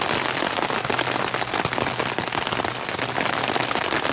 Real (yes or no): yes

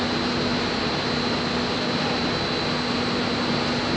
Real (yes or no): yes